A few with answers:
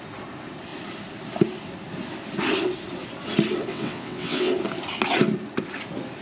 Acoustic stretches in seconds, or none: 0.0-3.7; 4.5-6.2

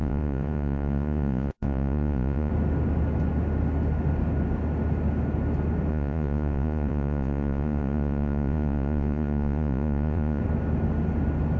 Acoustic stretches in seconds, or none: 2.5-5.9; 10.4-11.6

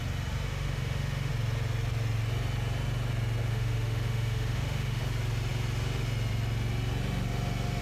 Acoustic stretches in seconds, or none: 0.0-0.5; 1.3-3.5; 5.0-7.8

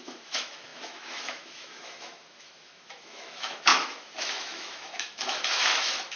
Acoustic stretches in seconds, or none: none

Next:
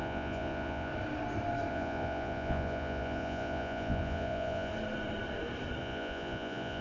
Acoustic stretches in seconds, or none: 0.9-1.7; 4.7-5.8